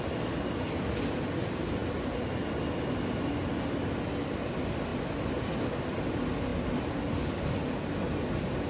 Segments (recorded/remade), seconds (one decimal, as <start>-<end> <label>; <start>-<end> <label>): 0.0-8.7 recorded